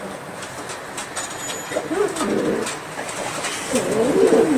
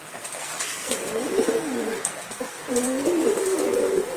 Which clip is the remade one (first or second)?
second